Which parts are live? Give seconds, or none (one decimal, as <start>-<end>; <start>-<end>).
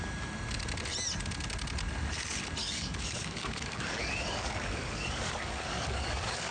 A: 0.0-2.6